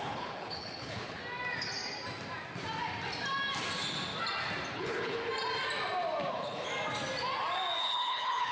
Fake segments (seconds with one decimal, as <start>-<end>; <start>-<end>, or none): 0.0-1.2; 4.7-5.2; 6.3-6.7; 7.8-8.5